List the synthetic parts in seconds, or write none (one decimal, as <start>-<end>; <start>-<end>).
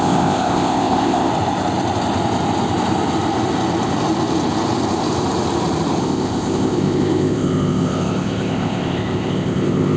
0.0-1.3; 6.0-10.0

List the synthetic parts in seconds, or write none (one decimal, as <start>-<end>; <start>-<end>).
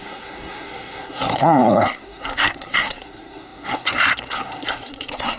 0.0-5.4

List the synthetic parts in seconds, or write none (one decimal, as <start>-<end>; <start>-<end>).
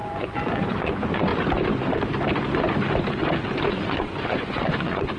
0.0-1.3; 3.7-5.2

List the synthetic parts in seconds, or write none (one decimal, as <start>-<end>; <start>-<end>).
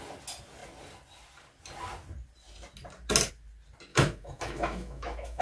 3.9-5.4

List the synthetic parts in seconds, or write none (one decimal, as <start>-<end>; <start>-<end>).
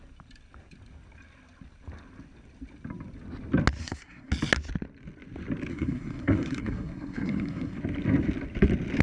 3.8-4.3; 5.7-7.8